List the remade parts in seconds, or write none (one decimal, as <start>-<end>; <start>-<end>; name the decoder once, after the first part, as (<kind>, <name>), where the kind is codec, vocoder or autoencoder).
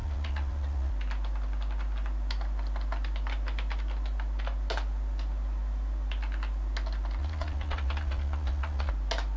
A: 0.0-0.9 (vocoder, Vocos); 7.2-8.9